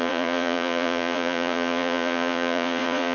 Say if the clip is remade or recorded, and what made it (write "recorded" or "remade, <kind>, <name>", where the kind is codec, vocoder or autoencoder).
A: remade, vocoder, Vocos